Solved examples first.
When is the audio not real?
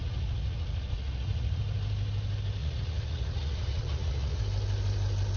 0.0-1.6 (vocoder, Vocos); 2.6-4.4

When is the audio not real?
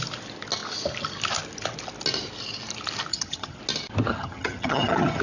3.1-3.6 (vocoder, HiFi-GAN); 4.1-5.2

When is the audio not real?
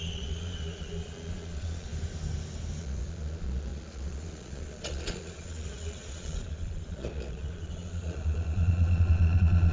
0.0-1.9 (vocoder, Vocos); 2.8-9.7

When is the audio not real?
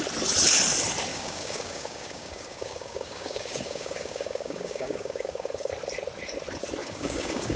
1.1-5.7 (codec, DAC); 6.8-7.6